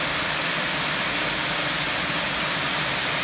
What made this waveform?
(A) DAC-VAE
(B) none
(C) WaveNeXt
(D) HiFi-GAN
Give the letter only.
B